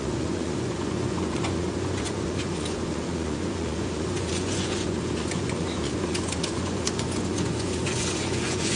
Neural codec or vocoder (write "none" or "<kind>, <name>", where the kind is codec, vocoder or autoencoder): vocoder, Vocos